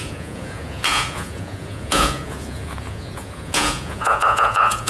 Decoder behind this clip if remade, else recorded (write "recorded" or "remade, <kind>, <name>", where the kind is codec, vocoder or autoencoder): remade, vocoder, Vocos